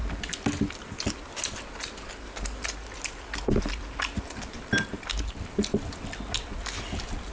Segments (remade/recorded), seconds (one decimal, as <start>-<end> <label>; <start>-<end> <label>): 0.0-7.3 recorded